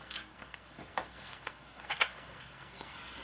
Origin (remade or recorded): remade